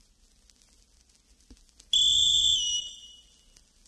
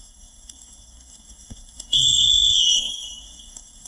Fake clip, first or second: second